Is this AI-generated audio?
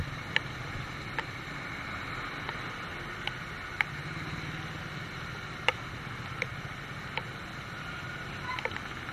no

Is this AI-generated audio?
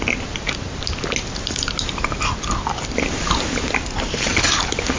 no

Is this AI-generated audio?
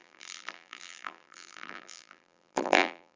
yes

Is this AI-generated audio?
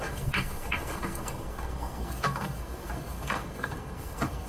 yes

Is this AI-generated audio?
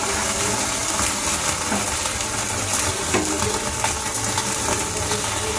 no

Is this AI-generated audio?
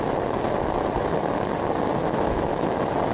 no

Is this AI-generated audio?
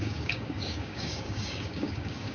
yes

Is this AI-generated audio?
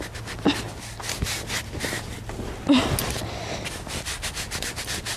no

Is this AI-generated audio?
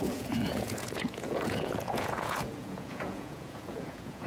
yes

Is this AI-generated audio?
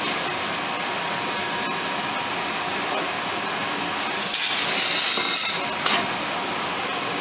no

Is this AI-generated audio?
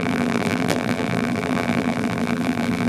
yes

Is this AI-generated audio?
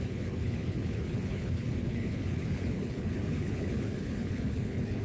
yes